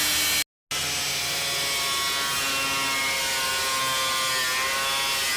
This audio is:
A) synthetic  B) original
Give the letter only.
B